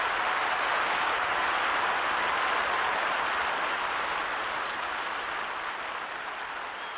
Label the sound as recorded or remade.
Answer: recorded